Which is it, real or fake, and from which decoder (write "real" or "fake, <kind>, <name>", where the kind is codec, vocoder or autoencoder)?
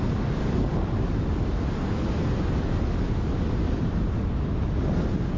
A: real